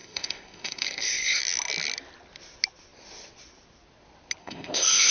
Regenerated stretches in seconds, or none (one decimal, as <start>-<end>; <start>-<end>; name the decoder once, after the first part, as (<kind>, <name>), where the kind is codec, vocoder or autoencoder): 0.0-1.4 (codec, ZipCodec); 4.4-5.1